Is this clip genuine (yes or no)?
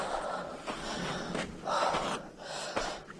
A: yes